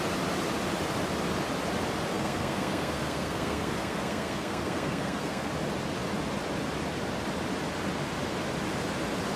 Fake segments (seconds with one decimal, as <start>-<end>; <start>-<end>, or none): 2.1-5.5